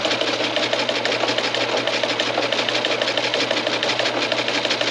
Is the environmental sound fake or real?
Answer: real